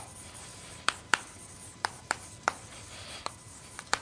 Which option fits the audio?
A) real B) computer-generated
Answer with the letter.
B